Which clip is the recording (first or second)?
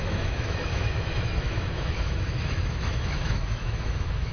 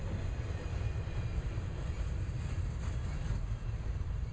second